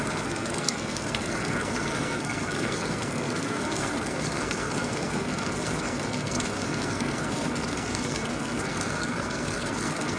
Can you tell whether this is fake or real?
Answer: fake